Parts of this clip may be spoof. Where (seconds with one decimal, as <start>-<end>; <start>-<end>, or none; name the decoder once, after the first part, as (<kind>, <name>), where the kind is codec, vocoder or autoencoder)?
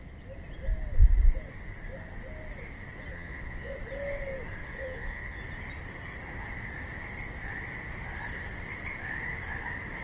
3.1-3.8 (vocoder, Vocos); 4.6-5.4